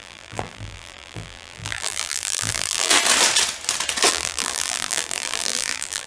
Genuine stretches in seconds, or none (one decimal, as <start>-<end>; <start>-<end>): 2.9-4.1